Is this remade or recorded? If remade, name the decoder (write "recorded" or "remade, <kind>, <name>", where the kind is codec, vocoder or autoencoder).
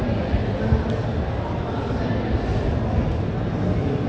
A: recorded